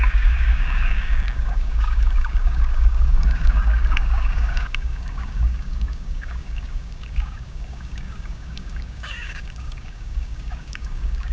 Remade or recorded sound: remade